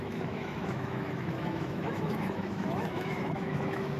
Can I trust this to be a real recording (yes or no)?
no